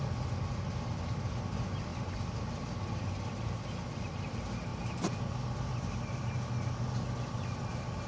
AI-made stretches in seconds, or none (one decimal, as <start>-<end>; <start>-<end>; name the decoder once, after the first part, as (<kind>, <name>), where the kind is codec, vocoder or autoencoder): none